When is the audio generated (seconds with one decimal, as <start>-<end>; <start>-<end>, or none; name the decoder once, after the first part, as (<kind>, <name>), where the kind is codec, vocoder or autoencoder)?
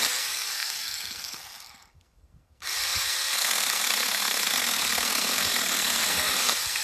0.0-6.8 (codec, SNAC)